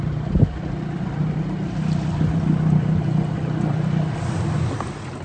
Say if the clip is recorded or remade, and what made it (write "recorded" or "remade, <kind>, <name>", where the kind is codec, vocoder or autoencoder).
recorded